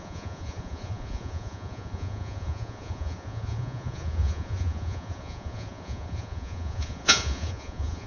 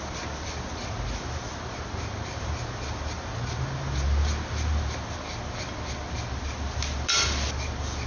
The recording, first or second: second